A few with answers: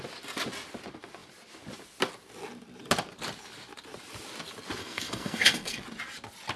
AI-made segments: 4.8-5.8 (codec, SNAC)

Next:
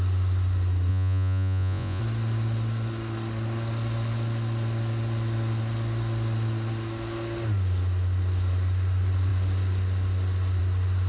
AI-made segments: 0.9-2.0 (vocoder, Vocos)

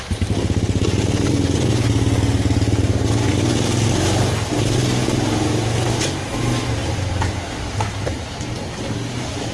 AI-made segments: none

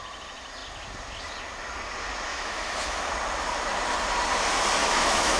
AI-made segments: 2.3-3.1 (autoencoder, DAC-VAE); 4.8-5.4